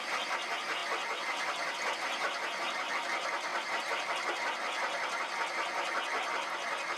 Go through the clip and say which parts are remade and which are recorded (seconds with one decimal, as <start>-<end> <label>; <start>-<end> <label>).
0.0-3.5 recorded; 3.5-4.1 remade; 4.1-7.0 recorded